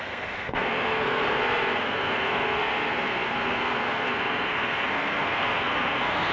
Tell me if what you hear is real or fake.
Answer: fake